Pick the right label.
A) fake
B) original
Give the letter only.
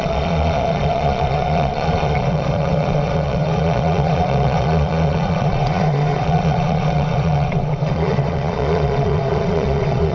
A